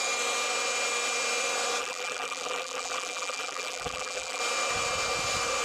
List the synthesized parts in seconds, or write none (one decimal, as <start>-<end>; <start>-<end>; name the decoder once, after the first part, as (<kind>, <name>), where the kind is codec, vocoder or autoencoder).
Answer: 1.8-4.4 (vocoder, BigVGAN v2)